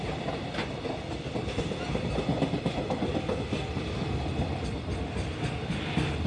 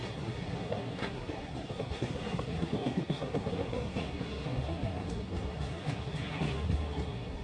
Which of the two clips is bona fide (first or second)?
first